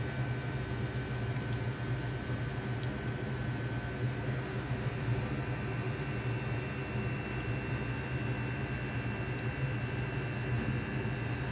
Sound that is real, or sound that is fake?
real